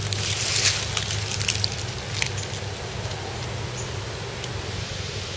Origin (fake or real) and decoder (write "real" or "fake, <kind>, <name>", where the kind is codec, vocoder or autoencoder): real